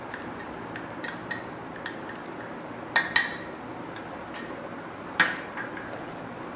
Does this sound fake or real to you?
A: real